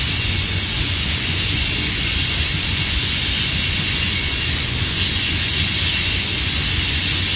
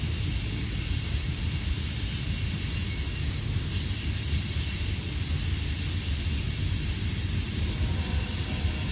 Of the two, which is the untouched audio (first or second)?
second